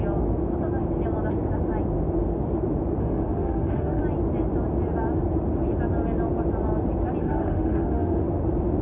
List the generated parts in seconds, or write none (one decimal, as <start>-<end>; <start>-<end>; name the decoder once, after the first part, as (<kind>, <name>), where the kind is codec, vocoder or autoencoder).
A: 3.0-4.0 (autoencoder, DAC-VAE); 7.2-8.2

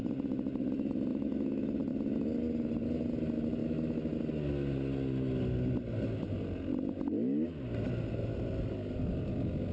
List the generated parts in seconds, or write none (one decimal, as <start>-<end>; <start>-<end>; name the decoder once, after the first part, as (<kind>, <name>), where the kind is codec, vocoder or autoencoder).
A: 1.1-1.8 (autoencoder, DAC-VAE); 3.6-4.2

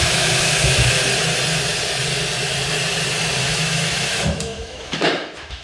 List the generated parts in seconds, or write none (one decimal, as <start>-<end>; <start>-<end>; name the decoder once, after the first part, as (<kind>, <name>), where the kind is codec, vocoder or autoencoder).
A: 0.0-1.0 (autoencoder, DAC-VAE); 3.4-5.6

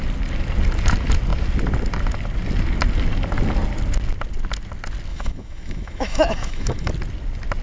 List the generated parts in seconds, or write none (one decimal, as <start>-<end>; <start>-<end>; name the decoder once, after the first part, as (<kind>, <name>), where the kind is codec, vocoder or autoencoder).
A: 5.1-6.9 (autoencoder, DAC-VAE)

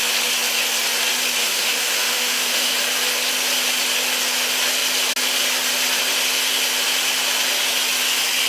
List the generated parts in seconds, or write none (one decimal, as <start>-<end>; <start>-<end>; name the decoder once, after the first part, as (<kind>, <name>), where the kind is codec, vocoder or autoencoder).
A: 1.4-2.7 (autoencoder, DAC-VAE)

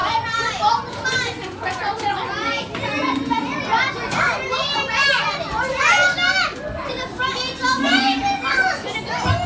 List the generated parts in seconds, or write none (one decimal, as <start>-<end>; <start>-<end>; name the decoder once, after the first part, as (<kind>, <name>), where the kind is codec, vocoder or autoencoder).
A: none